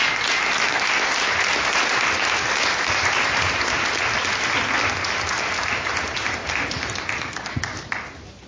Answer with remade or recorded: recorded